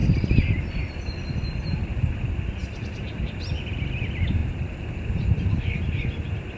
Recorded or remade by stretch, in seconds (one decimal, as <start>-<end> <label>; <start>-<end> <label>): 0.0-0.6 recorded; 0.6-6.6 remade